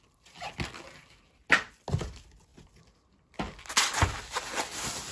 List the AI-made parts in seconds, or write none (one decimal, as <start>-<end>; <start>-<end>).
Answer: none